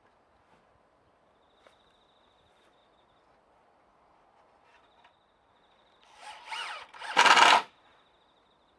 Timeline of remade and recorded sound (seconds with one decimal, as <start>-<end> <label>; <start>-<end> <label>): 0.0-8.8 recorded